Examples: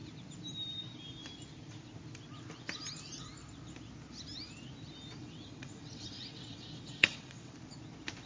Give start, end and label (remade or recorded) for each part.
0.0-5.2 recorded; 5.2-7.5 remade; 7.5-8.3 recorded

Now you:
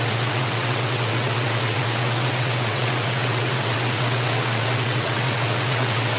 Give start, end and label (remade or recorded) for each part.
0.0-6.2 remade

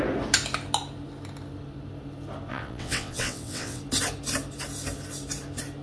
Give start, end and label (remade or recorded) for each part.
0.0-2.5 recorded; 2.5-3.8 remade; 3.8-5.8 recorded